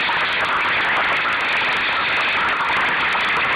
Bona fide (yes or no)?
yes